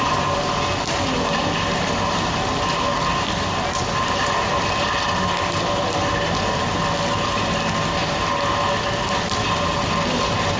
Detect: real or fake real